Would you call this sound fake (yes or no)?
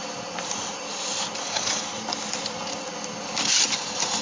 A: no